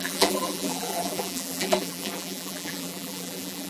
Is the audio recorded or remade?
remade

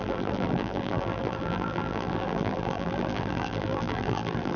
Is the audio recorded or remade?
remade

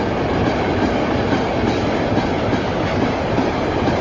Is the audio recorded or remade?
recorded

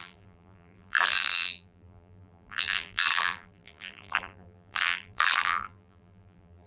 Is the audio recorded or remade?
remade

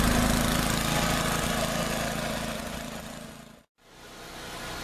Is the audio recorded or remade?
recorded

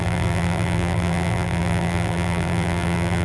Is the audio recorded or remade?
remade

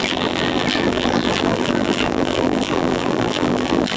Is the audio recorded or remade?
remade